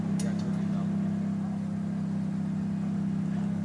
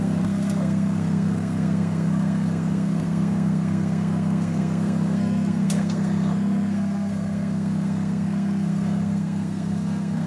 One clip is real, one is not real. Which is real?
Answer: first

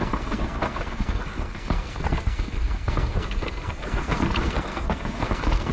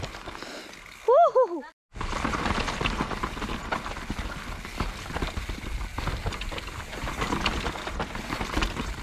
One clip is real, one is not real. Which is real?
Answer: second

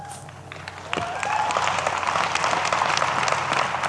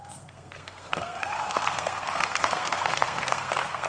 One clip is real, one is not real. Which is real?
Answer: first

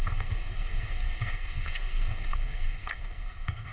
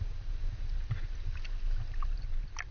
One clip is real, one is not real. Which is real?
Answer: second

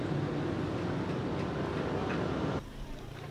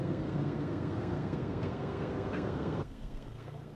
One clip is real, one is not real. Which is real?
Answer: first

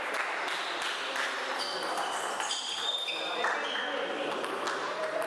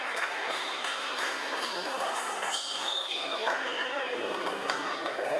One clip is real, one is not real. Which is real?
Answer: first